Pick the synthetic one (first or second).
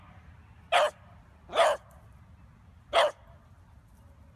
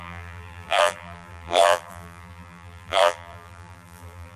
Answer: second